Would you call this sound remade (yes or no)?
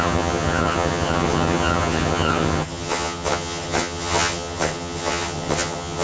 yes